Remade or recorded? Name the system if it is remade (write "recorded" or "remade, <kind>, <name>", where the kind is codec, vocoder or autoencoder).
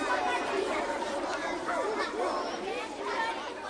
recorded